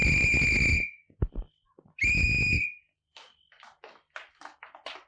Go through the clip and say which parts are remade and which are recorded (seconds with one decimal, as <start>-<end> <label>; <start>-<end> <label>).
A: 0.0-5.1 recorded